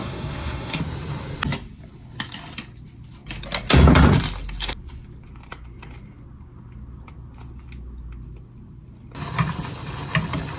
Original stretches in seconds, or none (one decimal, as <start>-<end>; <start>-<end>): 0.8-10.6